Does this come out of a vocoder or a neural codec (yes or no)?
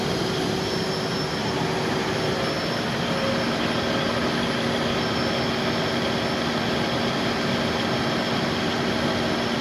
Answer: no